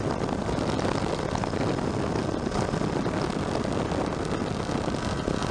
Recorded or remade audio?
recorded